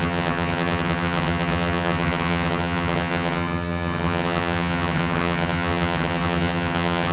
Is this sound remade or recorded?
remade